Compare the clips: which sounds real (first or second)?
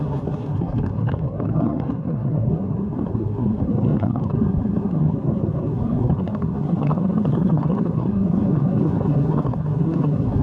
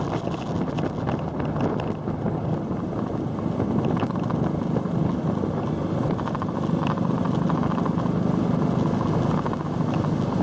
second